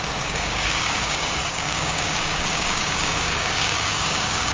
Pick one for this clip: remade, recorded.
remade